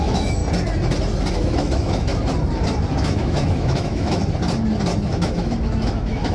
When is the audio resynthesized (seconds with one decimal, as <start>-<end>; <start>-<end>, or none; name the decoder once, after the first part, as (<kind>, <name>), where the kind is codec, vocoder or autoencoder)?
0.0-0.4 (autoencoder, DAC-VAE); 1.3-2.1; 2.9-4.2; 5.1-6.3